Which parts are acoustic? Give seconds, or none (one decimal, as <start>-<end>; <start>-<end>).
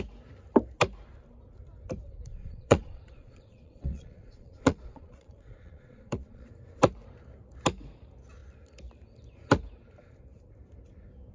0.0-2.3; 6.5-11.3